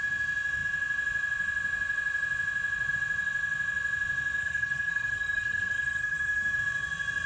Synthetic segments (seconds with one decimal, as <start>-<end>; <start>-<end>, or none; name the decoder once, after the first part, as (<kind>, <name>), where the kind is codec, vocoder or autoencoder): 4.4-6.6 (codec, SNAC)